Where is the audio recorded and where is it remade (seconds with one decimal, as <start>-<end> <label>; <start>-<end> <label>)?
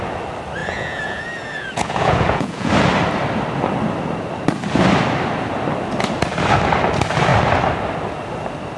0.0-0.6 recorded; 0.6-2.7 remade; 2.7-8.8 recorded